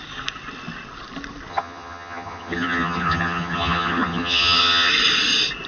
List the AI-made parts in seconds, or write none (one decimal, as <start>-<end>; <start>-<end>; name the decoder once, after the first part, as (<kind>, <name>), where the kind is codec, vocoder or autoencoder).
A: 1.5-4.9 (vocoder, HiFi-GAN)